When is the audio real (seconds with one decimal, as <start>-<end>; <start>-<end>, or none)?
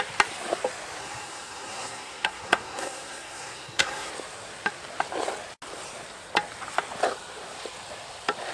0.0-1.0; 4.1-8.5